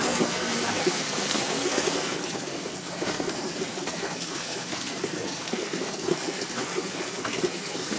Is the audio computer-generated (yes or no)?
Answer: yes